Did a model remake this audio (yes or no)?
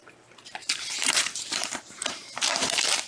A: yes